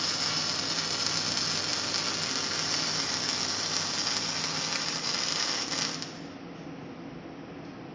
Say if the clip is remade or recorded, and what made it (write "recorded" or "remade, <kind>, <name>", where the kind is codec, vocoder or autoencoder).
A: recorded